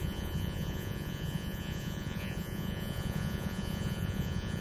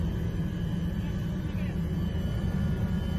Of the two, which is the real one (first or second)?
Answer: second